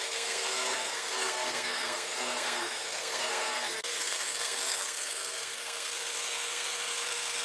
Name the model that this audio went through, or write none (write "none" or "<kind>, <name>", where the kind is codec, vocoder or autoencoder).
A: codec, SNAC